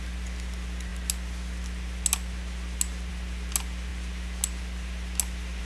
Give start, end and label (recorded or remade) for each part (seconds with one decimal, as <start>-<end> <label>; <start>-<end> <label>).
0.0-5.6 recorded